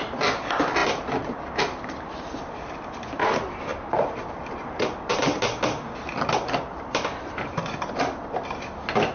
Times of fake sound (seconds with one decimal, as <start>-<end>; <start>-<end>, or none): 3.7-5.4; 6.7-7.9